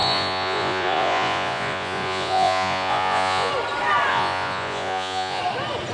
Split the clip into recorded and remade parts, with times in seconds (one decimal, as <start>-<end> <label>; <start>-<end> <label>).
0.0-3.5 remade; 3.5-4.1 recorded; 4.1-5.4 remade; 5.4-5.9 recorded